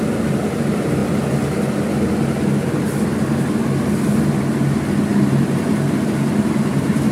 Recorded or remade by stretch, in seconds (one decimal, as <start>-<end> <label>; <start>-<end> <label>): 0.0-7.1 recorded